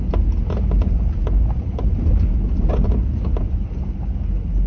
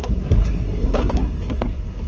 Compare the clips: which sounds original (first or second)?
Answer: first